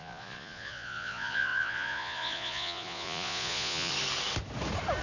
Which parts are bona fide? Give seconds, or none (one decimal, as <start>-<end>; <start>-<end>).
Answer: 3.9-5.0